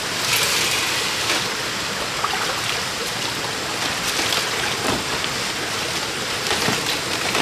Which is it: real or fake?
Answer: real